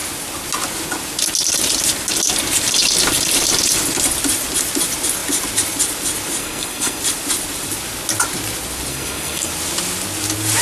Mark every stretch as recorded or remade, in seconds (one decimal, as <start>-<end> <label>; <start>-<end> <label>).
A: 0.0-6.4 recorded; 6.4-7.0 remade; 7.0-8.9 recorded; 8.9-9.5 remade; 9.5-10.6 recorded